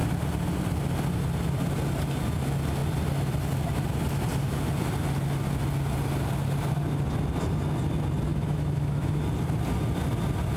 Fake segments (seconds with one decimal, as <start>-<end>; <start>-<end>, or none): 8.3-9.2